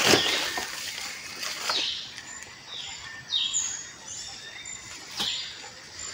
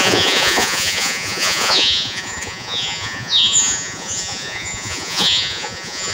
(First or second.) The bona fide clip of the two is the first